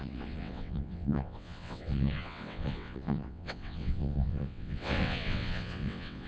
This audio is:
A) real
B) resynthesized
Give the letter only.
B